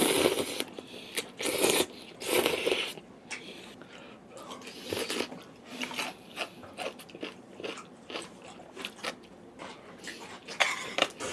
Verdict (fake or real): real